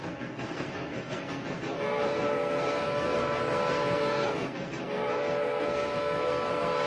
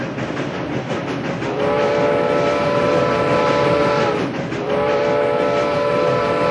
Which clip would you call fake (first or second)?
first